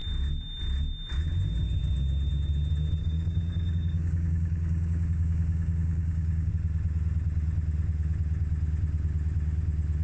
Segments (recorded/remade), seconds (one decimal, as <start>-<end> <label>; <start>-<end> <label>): 0.0-3.0 recorded; 3.0-6.5 remade; 6.5-10.0 recorded